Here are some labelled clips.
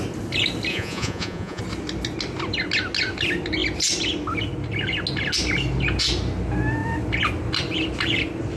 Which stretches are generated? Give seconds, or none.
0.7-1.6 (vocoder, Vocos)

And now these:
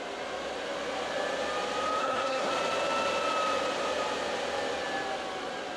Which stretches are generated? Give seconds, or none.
2.0-2.5 (codec, SNAC)

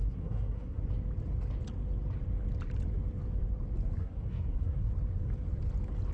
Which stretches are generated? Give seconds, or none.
0.0-0.8 (codec, SNAC); 4.0-4.9

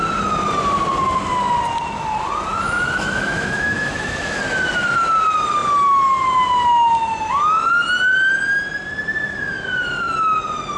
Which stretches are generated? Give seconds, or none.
2.5-4.4 (autoencoder, DAC-VAE)